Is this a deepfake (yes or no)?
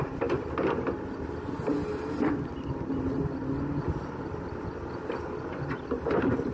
no